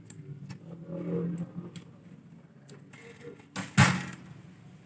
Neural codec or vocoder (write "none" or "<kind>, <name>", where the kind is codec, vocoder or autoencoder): none